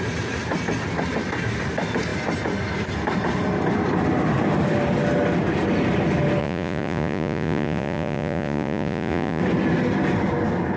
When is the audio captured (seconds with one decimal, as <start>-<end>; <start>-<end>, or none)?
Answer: 0.0-6.4; 9.4-10.8